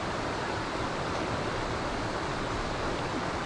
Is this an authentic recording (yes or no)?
yes